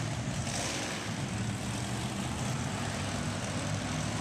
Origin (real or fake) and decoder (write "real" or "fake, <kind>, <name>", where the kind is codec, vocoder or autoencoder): real